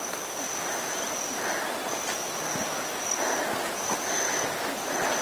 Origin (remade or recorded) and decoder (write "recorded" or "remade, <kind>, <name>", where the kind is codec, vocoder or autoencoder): recorded